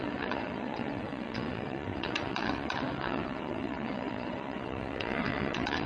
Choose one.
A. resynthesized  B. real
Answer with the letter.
A